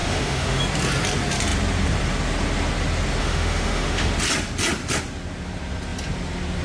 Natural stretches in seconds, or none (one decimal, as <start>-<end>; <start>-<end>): 0.6-3.2; 4.1-6.6

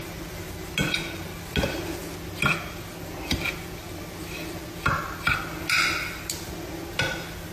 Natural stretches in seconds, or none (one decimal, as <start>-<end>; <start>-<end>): 0.0-7.5

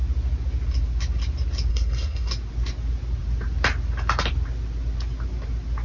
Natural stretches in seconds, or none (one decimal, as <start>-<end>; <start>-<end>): 0.0-1.7; 2.3-5.8

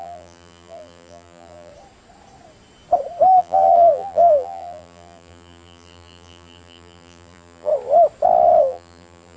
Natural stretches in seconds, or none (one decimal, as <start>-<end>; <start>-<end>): 1.7-3.4; 7.7-8.6

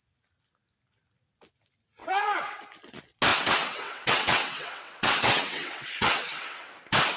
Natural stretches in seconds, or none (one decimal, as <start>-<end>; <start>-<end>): 0.0-2.0; 2.6-3.3; 6.7-7.2

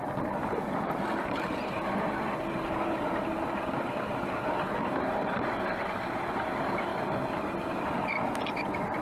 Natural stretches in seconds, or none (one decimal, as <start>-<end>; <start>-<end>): 0.0-9.0